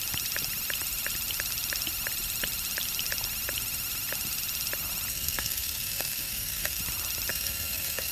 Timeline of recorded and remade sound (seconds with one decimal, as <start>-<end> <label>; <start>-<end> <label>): 0.0-5.1 recorded; 5.1-6.8 remade; 6.8-7.3 recorded; 7.3-8.1 remade